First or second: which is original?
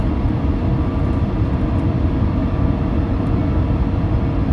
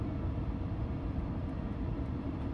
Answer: first